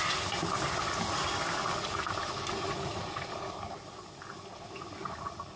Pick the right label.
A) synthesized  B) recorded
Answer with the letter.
B